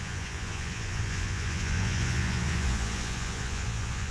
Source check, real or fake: fake